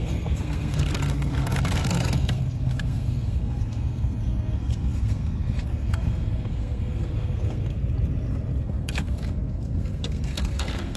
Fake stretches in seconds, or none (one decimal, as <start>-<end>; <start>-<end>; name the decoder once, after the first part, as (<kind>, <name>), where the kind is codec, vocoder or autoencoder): 0.0-7.8 (codec, SNAC); 8.6-11.0